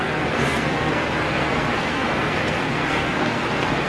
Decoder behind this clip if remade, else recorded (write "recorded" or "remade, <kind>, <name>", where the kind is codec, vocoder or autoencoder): remade, codec, SNAC